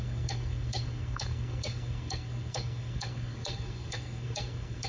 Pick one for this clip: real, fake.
fake